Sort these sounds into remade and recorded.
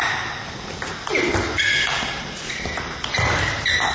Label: recorded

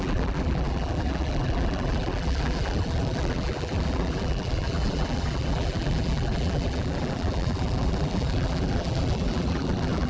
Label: remade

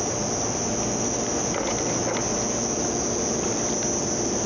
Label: recorded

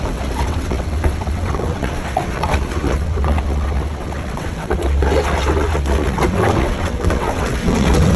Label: remade